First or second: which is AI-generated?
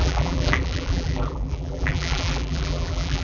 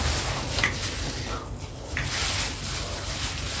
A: first